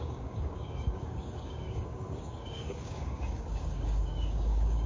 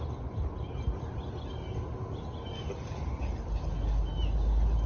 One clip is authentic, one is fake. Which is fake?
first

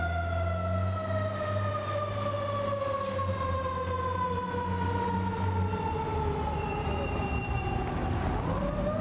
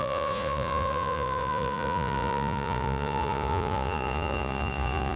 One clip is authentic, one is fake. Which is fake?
second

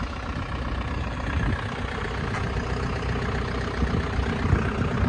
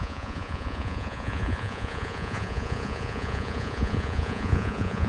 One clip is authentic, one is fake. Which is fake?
second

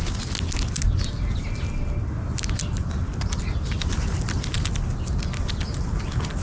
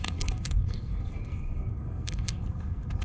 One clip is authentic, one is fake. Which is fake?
second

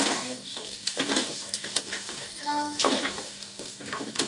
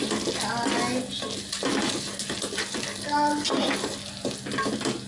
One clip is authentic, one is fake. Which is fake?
first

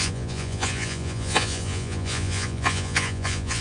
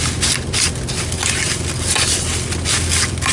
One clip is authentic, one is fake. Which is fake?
first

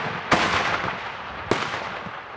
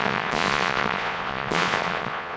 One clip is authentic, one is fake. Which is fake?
second